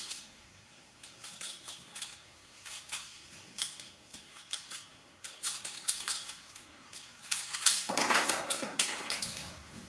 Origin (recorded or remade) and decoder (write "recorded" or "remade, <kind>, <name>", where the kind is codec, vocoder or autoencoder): remade, codec, SNAC